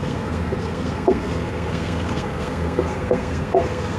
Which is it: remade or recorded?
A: remade